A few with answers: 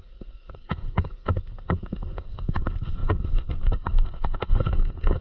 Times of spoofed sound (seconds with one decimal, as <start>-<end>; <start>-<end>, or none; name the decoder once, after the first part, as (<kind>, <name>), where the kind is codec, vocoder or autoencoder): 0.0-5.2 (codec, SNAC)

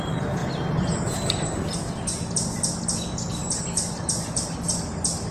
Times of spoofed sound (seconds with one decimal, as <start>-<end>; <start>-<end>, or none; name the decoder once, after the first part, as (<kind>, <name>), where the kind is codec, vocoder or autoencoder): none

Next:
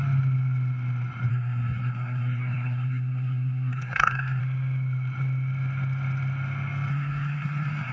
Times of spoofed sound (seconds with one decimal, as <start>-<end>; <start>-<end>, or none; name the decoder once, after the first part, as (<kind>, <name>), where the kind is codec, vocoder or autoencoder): 1.3-4.4 (codec, SNAC); 6.9-7.9

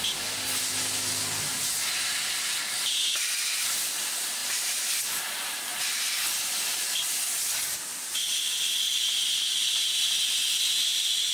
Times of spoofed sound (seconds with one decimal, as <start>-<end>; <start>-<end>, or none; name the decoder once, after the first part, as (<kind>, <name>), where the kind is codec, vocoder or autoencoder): none

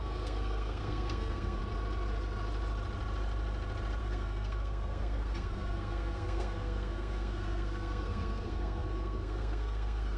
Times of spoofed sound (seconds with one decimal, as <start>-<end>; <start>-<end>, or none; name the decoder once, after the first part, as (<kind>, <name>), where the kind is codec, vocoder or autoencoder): 0.0-1.6 (codec, SNAC); 4.0-10.2